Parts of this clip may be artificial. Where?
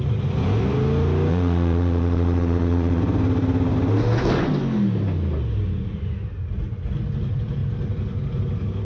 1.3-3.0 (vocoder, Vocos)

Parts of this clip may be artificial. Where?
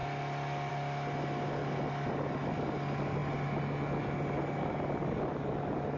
none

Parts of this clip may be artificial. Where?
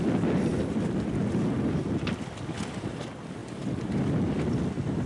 none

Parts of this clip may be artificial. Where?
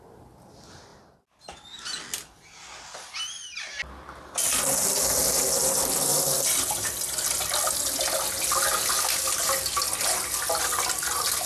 none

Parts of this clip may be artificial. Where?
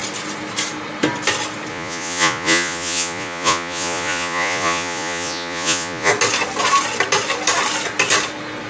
1.7-6.1 (vocoder, Vocos)